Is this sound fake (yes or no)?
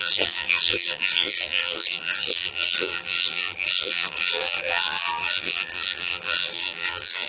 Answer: yes